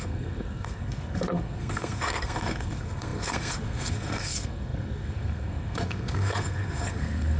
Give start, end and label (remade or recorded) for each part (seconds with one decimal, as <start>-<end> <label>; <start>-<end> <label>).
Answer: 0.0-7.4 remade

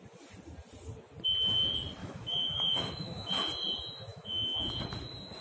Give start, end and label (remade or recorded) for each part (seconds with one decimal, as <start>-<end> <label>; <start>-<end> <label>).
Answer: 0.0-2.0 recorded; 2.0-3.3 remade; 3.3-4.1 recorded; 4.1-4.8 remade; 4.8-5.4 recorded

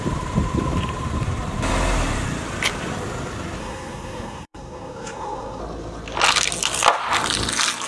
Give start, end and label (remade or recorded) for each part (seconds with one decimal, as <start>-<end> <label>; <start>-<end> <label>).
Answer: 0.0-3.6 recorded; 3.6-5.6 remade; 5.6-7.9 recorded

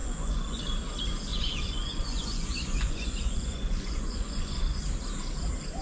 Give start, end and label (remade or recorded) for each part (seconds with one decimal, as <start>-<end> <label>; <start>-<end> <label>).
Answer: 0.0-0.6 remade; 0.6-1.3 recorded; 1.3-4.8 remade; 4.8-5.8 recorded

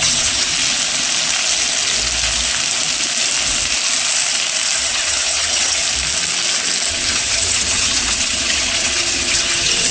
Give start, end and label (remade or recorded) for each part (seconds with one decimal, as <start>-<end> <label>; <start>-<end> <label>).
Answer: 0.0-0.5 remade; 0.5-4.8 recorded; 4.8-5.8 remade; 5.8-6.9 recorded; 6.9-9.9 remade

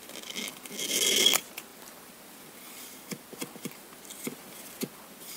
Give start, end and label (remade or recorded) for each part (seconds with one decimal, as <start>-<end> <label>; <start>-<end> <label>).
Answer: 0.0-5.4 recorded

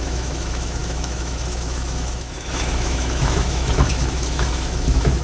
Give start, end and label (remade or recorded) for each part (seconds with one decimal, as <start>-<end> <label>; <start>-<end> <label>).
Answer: 0.0-5.2 remade